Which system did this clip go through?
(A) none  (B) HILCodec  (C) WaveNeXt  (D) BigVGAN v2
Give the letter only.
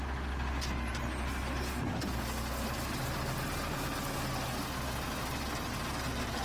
A